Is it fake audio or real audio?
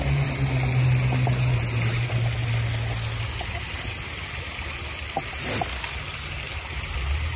real